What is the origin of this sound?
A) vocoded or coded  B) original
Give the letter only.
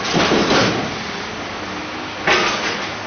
B